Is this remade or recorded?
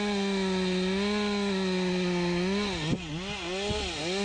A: recorded